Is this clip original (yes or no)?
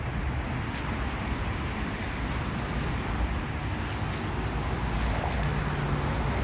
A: yes